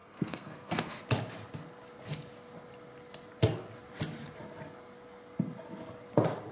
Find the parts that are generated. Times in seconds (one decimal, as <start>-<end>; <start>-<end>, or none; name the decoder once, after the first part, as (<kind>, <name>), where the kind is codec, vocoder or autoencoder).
0.0-1.0 (codec, SNAC)